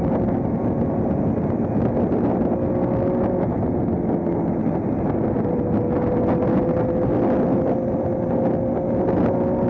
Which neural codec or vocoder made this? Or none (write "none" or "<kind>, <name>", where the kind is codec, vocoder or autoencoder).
none